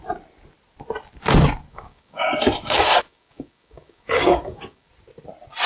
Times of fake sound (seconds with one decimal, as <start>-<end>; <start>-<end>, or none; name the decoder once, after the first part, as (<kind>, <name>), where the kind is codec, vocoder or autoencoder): 1.7-4.9 (codec, DAC)